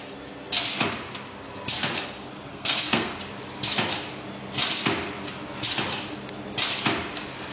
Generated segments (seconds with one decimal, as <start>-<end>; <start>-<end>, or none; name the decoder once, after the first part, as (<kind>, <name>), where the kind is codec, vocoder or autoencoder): 2.5-3.1 (codec, SNAC)